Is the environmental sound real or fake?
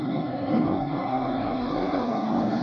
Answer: fake